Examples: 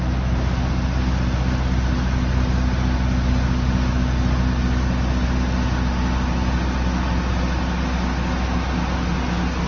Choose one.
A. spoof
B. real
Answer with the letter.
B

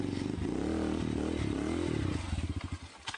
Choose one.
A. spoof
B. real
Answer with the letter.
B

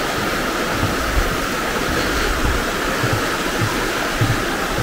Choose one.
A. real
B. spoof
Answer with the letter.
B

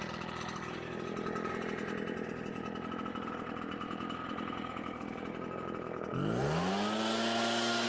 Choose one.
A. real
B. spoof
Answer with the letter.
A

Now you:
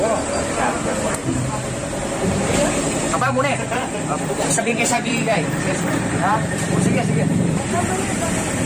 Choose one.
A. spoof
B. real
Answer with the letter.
A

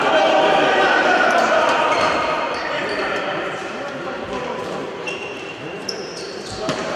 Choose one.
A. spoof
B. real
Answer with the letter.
A